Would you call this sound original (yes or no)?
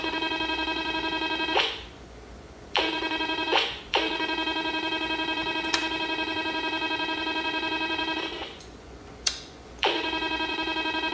no